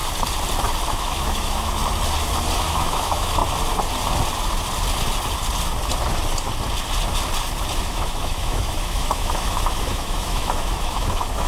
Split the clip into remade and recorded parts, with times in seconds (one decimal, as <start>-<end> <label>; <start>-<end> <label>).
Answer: 0.0-0.9 recorded; 0.9-1.8 remade; 1.8-2.6 recorded; 2.6-3.4 remade; 3.4-7.8 recorded; 7.8-11.5 remade